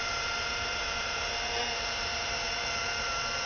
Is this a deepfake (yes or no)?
yes